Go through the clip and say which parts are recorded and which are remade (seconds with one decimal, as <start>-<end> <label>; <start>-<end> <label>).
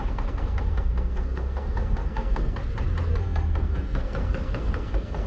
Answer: 0.0-2.6 remade; 2.6-3.1 recorded; 3.1-5.3 remade